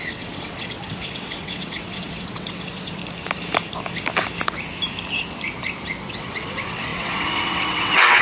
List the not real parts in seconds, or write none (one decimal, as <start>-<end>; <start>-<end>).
0.0-3.0; 6.0-8.2